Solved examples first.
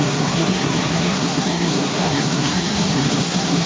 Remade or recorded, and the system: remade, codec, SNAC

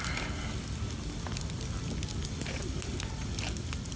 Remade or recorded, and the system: recorded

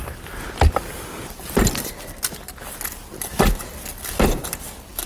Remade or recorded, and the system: recorded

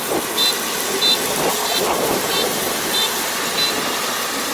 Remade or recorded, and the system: recorded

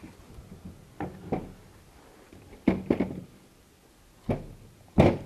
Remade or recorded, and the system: recorded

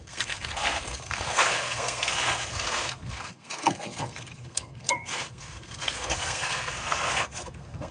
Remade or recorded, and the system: remade, codec, SNAC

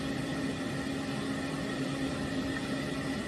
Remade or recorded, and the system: recorded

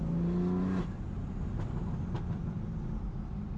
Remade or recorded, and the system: recorded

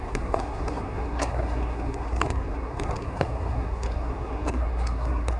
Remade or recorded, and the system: remade, codec, SNAC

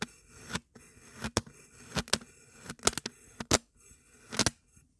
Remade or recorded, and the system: recorded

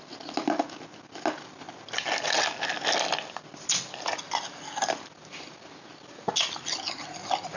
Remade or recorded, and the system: recorded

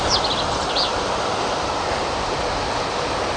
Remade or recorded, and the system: recorded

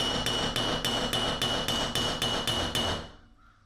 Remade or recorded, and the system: recorded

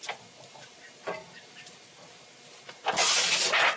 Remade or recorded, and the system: recorded